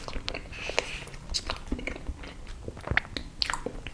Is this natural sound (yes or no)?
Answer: yes